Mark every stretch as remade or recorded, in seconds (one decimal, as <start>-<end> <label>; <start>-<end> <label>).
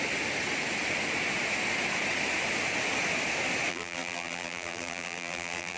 0.0-3.7 recorded; 3.7-5.8 remade